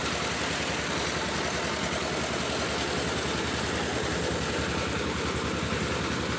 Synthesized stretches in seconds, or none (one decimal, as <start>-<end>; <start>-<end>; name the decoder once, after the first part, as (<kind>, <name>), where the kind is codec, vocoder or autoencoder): none